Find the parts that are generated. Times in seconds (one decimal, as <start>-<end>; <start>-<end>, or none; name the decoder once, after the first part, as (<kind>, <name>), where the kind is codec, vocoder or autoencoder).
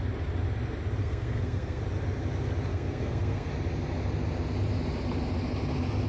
1.0-1.8 (codec, SNAC); 2.7-3.5